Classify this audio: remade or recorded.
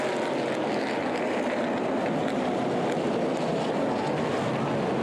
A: recorded